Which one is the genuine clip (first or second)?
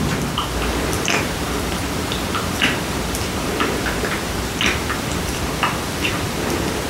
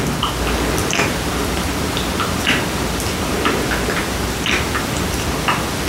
second